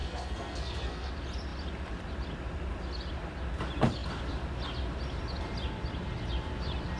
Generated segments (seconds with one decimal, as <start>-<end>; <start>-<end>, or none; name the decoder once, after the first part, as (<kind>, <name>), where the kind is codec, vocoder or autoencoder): 0.0-1.1 (codec, SNAC)